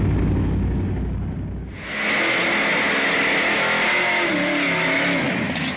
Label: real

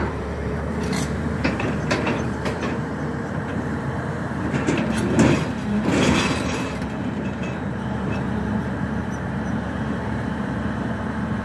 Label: fake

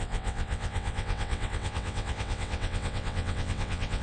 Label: fake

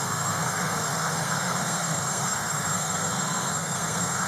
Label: fake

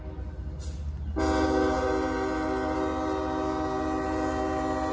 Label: real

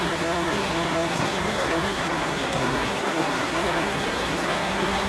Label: fake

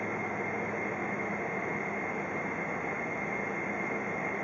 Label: real